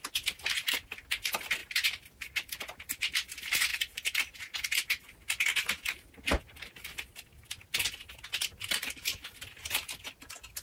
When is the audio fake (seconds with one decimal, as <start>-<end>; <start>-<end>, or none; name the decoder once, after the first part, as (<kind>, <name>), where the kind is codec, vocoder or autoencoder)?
1.6-2.3 (vocoder, BigVGAN v2); 3.7-4.4